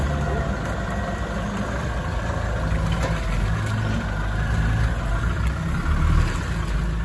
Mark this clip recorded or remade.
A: recorded